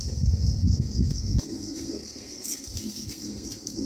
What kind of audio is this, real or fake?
fake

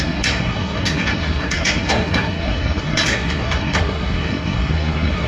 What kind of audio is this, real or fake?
fake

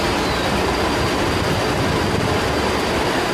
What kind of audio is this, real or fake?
real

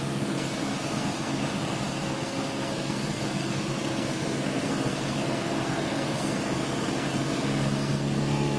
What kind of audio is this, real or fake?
fake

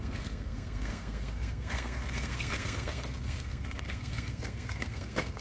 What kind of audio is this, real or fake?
fake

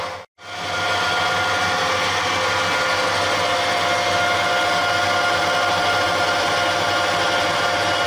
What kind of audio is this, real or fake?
real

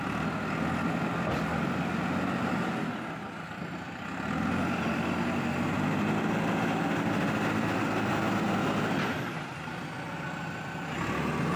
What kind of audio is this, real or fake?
real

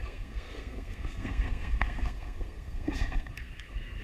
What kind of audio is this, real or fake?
fake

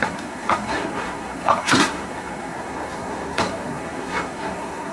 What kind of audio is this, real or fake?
fake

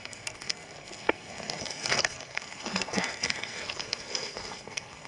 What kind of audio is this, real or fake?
fake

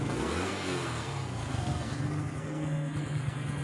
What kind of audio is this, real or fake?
fake